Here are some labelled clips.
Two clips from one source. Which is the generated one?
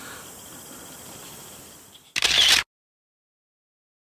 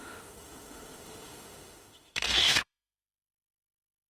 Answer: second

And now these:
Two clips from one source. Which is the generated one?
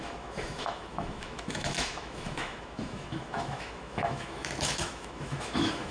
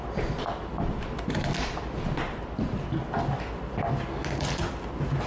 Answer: first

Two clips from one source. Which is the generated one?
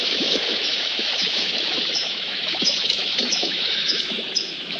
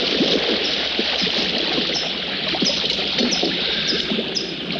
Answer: first